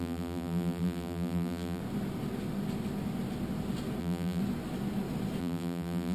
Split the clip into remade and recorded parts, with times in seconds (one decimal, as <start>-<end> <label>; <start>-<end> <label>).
0.0-1.8 remade; 1.8-4.0 recorded; 4.0-4.4 remade; 4.4-5.4 recorded; 5.4-6.1 remade